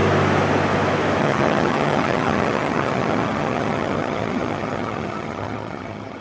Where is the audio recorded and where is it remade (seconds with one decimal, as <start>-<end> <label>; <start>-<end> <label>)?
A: 0.0-1.2 recorded; 1.2-6.2 remade